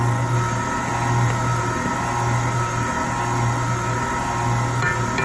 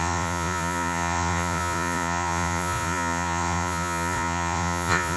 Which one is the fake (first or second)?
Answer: second